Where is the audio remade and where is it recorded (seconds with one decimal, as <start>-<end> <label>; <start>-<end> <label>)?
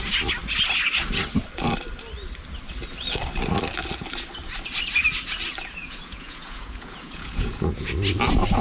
0.0-5.8 recorded; 5.8-7.9 remade; 7.9-8.6 recorded